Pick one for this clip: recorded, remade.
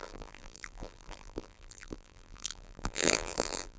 remade